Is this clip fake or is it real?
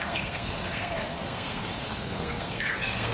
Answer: fake